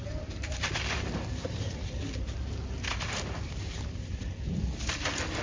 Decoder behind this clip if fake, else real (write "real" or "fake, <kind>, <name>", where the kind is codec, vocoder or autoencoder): fake, vocoder, BigVGAN v2